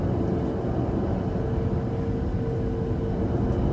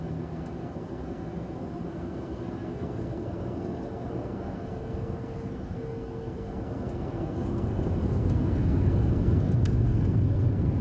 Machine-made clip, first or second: second